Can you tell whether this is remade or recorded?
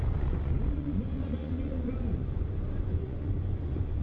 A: remade